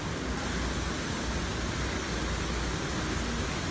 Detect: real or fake real